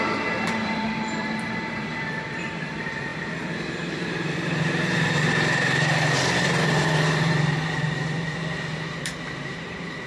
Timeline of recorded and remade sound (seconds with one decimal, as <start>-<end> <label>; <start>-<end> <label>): 0.0-10.1 remade